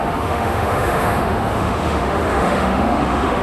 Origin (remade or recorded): remade